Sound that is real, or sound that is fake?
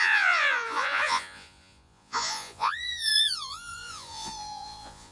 fake